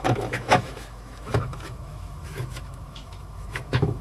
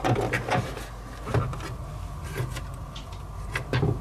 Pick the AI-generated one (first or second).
first